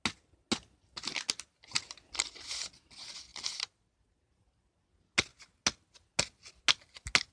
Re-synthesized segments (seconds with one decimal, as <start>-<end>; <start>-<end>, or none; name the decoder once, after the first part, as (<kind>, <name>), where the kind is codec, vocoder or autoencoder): 3.3-3.9 (vocoder, BigVGAN v2)